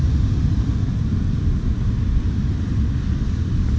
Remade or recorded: recorded